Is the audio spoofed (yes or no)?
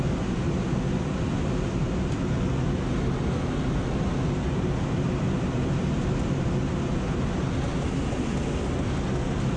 no